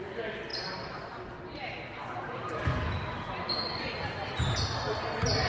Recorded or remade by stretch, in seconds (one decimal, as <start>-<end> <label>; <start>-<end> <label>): 0.0-5.5 recorded